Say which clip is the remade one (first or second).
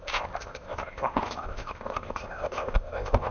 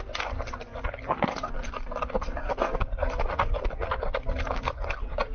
first